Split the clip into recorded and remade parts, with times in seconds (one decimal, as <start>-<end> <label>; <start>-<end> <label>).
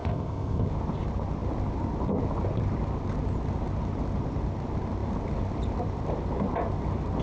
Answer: 0.0-0.7 remade; 0.7-7.2 recorded